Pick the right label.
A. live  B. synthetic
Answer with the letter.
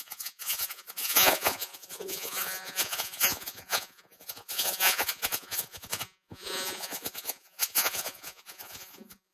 B